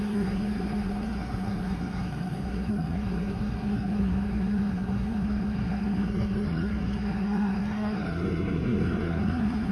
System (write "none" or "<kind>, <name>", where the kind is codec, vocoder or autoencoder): codec, SNAC